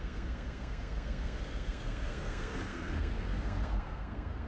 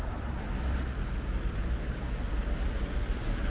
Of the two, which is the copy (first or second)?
first